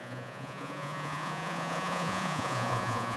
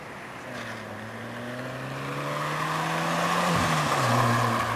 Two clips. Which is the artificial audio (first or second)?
first